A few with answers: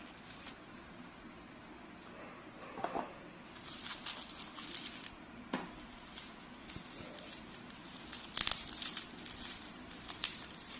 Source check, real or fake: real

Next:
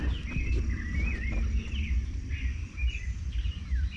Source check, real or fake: real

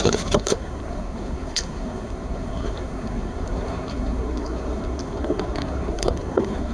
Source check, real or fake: fake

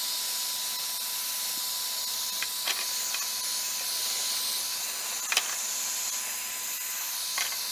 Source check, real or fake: real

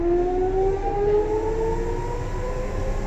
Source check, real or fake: real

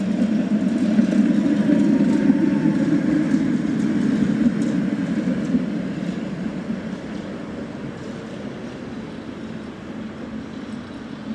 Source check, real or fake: real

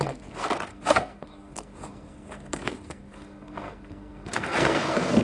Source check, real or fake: fake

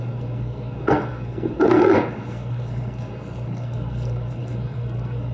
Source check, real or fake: fake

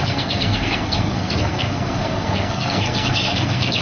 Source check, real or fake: fake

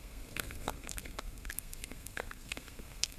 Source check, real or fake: fake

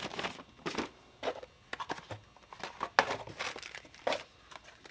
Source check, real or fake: real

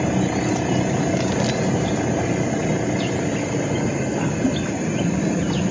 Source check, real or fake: real